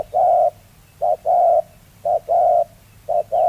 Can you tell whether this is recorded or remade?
remade